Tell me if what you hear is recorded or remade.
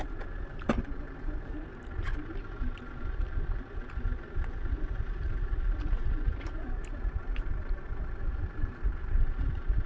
recorded